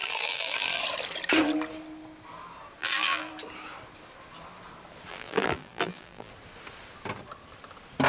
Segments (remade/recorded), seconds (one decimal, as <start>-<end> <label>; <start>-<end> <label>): 0.0-0.8 remade; 0.8-2.8 recorded; 2.8-3.3 remade; 3.3-5.1 recorded; 5.1-6.3 remade; 6.3-8.1 recorded